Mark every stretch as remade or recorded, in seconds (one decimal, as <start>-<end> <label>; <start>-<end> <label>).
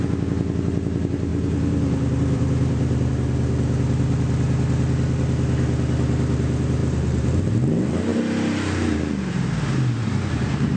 0.0-1.3 recorded; 1.3-3.1 remade; 3.1-6.8 recorded; 6.8-7.4 remade; 7.4-8.1 recorded; 8.1-9.5 remade; 9.5-10.0 recorded; 10.0-10.8 remade